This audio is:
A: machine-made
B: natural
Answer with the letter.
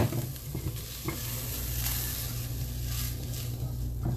B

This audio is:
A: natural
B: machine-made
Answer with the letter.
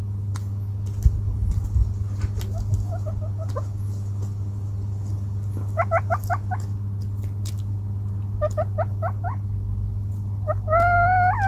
A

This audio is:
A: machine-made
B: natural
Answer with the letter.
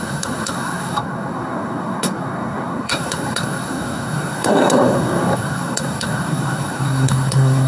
A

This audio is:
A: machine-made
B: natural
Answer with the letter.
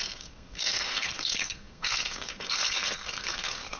A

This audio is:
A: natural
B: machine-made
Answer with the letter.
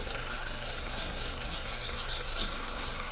B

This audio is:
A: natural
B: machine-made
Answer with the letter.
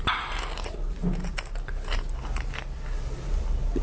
A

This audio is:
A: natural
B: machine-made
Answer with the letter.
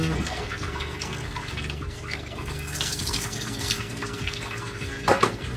B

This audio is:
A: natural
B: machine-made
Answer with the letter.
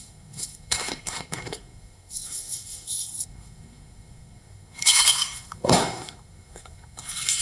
B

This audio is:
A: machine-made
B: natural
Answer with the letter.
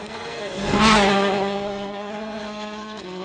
A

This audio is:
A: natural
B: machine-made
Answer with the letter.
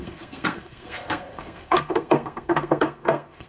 B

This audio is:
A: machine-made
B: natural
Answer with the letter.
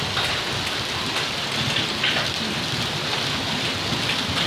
B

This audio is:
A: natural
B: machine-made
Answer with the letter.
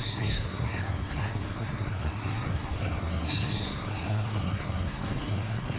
B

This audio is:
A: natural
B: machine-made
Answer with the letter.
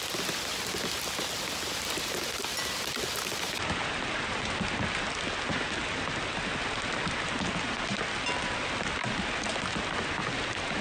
A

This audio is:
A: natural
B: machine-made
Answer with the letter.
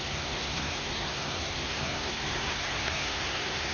B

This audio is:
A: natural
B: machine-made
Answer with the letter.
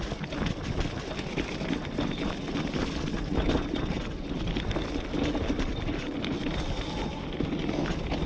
A